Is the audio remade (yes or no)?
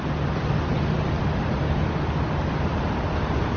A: no